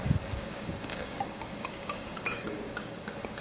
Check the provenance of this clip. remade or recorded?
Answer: remade